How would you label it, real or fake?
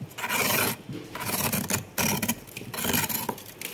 real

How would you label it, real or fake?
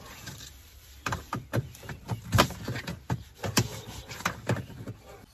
fake